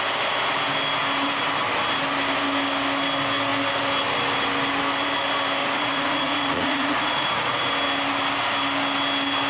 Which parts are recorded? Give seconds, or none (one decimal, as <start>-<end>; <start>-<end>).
0.0-5.6; 7.7-9.5